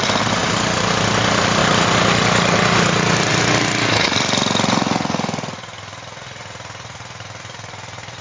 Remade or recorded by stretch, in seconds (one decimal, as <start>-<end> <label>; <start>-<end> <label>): 0.0-8.2 recorded